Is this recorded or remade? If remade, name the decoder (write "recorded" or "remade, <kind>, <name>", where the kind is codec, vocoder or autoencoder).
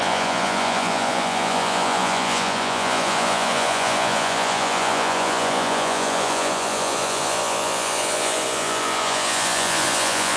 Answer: remade, vocoder, Vocos